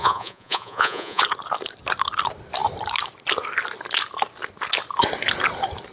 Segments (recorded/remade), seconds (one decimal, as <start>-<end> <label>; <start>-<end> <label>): 0.0-1.2 remade; 1.2-5.9 recorded